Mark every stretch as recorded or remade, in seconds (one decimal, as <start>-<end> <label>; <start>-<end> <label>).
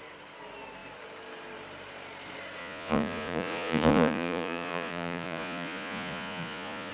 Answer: 0.0-2.6 recorded; 2.6-6.9 remade